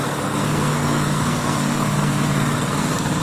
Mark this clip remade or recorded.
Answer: remade